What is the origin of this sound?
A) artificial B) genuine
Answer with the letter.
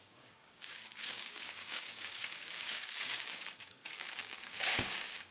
A